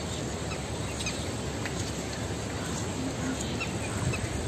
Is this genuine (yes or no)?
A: yes